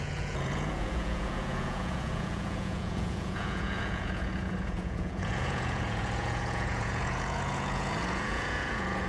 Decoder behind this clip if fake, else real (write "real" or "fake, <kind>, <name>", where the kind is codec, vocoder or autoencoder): fake, vocoder, Vocos